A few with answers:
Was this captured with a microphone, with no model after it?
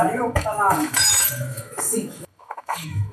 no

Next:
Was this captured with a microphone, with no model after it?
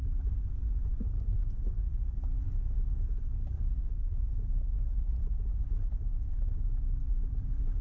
yes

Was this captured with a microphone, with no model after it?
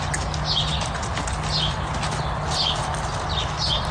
yes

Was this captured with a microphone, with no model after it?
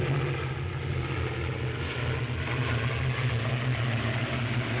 yes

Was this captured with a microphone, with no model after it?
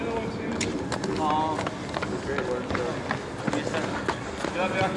yes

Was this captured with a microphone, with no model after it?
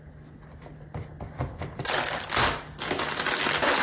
yes